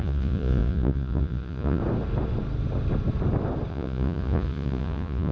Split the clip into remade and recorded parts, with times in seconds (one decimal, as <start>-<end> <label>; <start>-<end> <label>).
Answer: 0.0-1.8 remade; 1.8-3.7 recorded; 3.7-5.3 remade